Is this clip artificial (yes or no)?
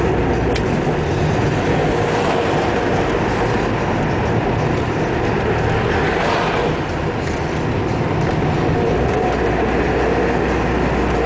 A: no